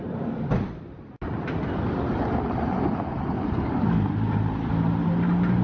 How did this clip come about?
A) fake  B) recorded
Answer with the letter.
B